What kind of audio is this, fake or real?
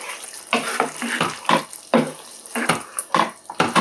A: real